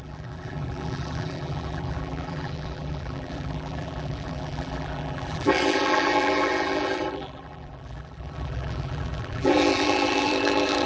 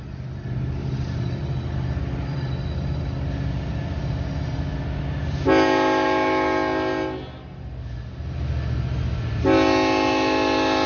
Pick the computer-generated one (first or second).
first